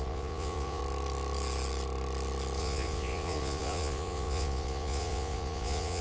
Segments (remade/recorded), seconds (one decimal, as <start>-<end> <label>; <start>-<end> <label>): 0.0-0.8 remade; 0.8-2.6 recorded; 2.6-6.0 remade